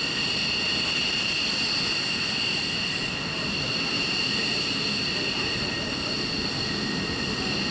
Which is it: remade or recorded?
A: recorded